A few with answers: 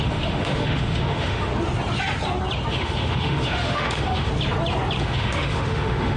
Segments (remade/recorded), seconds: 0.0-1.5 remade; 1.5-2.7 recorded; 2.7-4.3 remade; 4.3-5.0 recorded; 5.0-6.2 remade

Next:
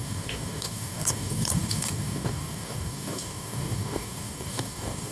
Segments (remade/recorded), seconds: 0.0-5.1 remade